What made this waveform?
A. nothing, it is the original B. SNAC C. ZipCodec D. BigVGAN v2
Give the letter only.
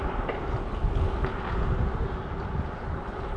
A